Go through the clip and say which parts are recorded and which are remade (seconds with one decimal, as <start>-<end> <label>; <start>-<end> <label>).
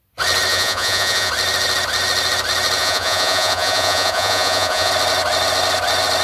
0.0-0.5 recorded; 0.5-1.3 remade; 1.3-2.8 recorded; 2.8-4.9 remade; 4.9-6.2 recorded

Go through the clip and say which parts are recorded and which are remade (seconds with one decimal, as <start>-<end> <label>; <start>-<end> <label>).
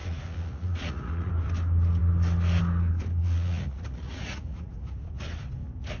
0.0-1.3 remade; 1.3-3.2 recorded; 3.2-4.7 remade; 4.7-6.0 recorded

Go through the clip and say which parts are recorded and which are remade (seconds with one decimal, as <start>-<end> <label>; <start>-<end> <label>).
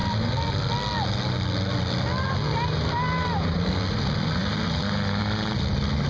0.0-6.1 recorded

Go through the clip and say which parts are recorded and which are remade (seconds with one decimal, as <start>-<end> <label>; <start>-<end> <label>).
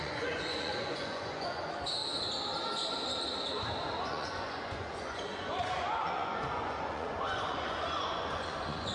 0.0-2.0 remade; 2.0-4.0 recorded; 4.0-8.9 remade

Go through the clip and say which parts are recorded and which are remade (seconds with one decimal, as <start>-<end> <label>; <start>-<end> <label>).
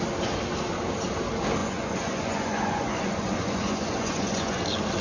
0.0-1.6 recorded; 1.6-4.6 remade; 4.6-5.0 recorded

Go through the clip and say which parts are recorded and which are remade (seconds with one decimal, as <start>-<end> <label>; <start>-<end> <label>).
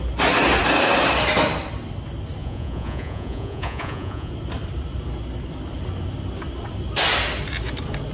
0.0-2.4 recorded; 2.4-4.3 remade; 4.3-8.1 recorded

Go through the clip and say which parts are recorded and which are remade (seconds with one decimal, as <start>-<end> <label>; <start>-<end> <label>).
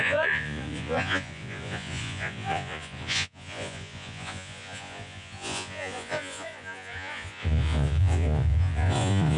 0.0-9.4 remade